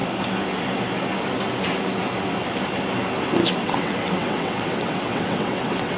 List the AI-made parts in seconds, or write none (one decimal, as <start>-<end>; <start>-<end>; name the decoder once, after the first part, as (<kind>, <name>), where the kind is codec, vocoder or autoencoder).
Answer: 3.6-6.0 (vocoder, WaveNeXt)